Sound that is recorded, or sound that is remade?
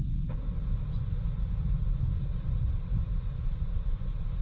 recorded